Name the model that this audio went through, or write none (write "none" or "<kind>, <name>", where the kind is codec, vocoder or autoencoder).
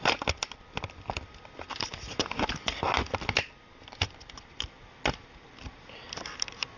none